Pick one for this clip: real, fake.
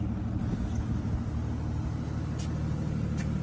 real